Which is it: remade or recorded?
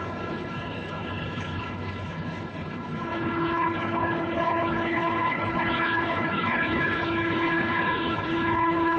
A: remade